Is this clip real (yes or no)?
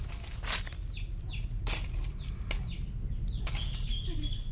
yes